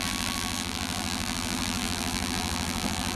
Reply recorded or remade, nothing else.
remade